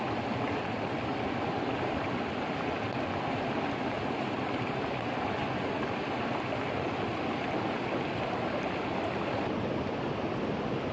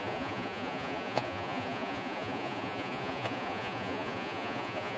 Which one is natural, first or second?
first